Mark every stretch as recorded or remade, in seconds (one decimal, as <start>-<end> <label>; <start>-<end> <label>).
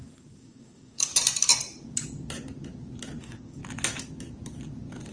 0.0-1.1 remade; 1.1-3.2 recorded; 3.2-3.6 remade; 3.6-5.1 recorded